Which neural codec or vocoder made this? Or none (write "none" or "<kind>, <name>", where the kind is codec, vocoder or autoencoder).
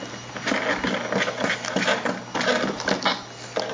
none